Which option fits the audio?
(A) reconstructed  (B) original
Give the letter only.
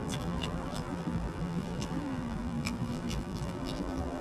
A